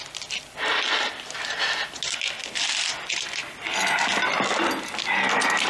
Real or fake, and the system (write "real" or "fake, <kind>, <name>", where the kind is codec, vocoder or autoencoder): real